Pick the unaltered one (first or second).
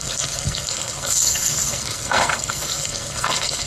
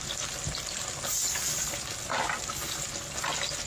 second